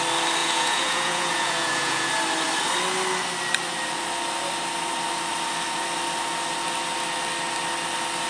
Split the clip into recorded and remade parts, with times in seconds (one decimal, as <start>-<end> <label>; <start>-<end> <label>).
0.0-0.4 recorded; 0.4-2.1 remade; 2.1-8.3 recorded